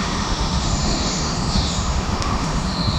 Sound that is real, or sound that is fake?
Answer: fake